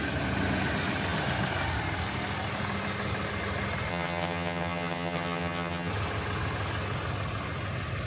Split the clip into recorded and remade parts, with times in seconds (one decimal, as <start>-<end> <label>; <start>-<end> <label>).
0.0-3.9 recorded; 3.9-5.9 remade; 5.9-8.1 recorded